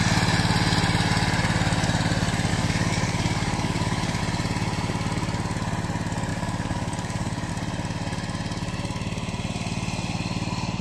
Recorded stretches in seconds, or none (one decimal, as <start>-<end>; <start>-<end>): 0.0-2.5; 4.2-6.3; 7.5-10.8